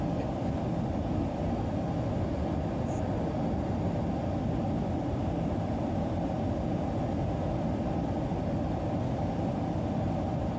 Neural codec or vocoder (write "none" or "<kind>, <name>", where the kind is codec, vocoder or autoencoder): none